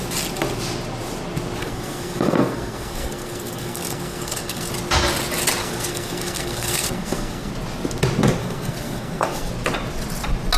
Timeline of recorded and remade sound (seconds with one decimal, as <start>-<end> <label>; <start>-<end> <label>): 0.0-1.6 recorded; 1.6-4.7 remade; 4.7-5.6 recorded; 5.6-7.5 remade; 7.5-8.4 recorded; 8.4-9.5 remade; 9.5-10.6 recorded